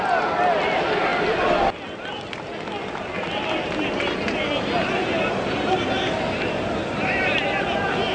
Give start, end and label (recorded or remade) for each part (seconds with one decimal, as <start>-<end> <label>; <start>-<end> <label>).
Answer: 0.0-8.1 recorded